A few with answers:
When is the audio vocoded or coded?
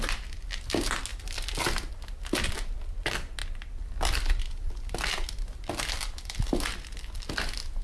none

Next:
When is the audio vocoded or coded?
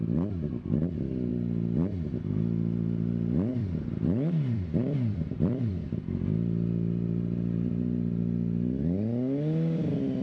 3.5-5.7 (vocoder, BigVGAN v2)